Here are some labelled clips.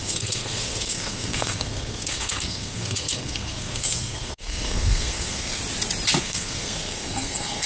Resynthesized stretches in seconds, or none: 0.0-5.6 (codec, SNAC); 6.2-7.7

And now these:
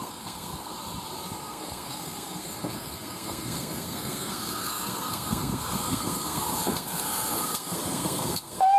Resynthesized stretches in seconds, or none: 0.0-0.7 (codec, SNAC); 1.4-8.8